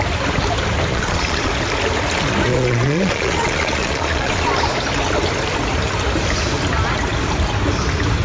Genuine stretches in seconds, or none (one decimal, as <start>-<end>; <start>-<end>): 0.0-0.9; 1.5-2.5; 4.5-8.2